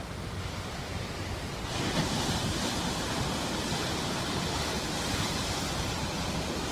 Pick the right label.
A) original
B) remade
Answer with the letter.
A